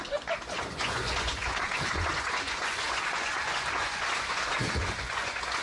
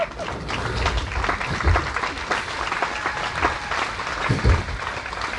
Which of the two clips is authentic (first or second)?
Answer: second